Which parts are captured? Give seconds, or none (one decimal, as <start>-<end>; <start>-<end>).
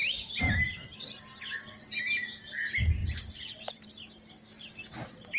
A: 1.4-3.0; 3.9-5.4